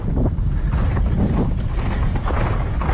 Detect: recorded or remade recorded